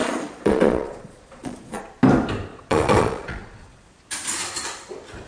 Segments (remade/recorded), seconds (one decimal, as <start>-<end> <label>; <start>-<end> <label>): 0.0-1.8 remade; 1.8-2.5 recorded; 2.5-3.8 remade; 3.8-5.3 recorded